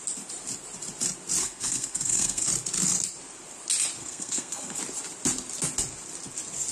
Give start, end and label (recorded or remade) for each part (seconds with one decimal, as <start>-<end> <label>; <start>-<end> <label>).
0.0-1.4 recorded; 1.4-2.5 remade; 2.5-4.0 recorded; 4.0-4.8 remade; 4.8-6.7 recorded